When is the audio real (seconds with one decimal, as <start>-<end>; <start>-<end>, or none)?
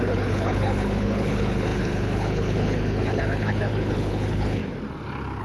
4.6-5.4